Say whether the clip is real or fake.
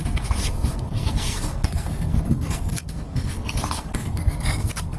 fake